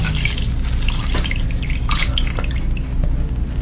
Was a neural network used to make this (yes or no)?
no